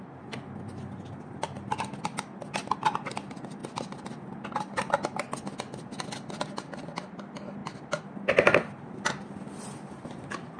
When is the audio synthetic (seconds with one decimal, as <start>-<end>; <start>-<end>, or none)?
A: none